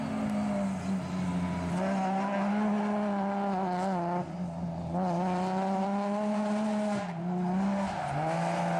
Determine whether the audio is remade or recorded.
recorded